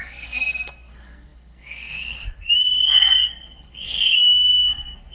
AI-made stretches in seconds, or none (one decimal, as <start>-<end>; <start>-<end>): 0.0-5.1